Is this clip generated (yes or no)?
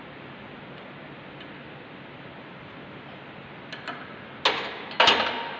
no